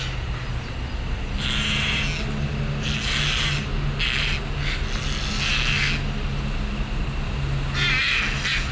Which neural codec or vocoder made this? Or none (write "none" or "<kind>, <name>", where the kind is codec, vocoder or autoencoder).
none